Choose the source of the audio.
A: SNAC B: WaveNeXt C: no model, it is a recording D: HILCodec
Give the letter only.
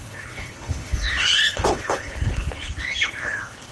D